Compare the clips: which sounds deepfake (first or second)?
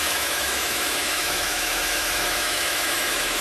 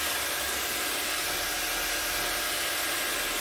first